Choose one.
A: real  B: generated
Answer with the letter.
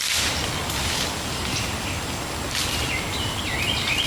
A